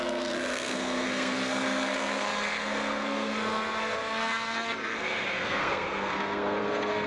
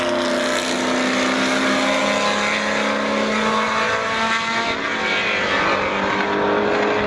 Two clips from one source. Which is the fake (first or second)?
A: first